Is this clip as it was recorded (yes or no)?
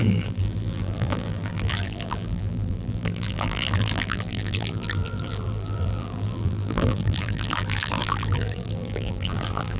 no